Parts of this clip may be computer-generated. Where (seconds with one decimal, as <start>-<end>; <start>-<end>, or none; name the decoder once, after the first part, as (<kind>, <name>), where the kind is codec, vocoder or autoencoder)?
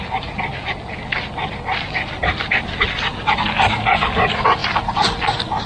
none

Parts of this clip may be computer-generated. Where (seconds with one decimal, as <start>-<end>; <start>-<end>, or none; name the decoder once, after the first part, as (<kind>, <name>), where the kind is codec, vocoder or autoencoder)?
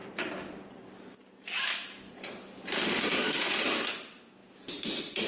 0.0-0.7 (vocoder, BigVGAN v2); 1.2-3.5